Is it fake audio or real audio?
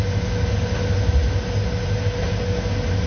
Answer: real